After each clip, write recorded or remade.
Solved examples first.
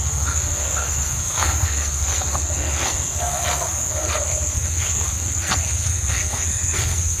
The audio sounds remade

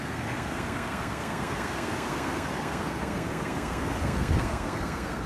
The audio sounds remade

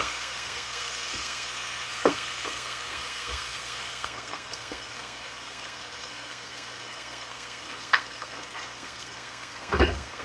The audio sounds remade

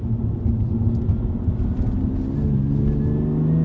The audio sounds recorded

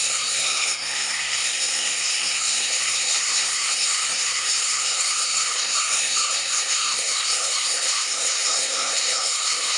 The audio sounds remade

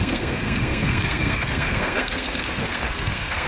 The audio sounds remade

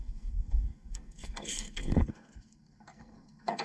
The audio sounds remade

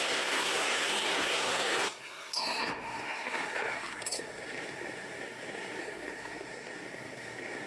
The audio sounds remade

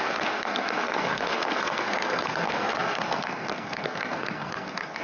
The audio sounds remade